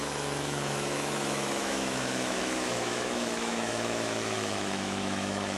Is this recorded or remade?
remade